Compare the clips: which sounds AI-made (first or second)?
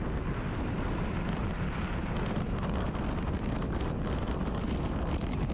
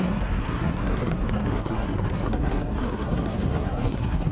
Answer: second